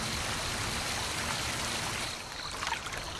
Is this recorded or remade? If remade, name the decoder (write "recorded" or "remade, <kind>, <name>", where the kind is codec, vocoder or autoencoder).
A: recorded